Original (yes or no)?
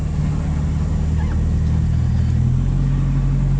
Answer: yes